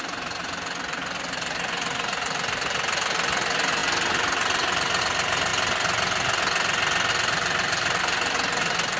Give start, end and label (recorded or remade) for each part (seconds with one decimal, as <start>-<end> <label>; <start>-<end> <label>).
0.0-5.5 remade; 5.5-7.1 recorded; 7.1-9.0 remade